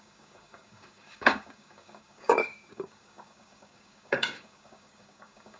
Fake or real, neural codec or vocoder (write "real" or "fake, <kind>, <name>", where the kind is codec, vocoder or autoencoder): fake, codec, DAC